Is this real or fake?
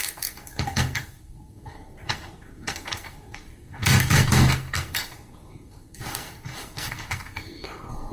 fake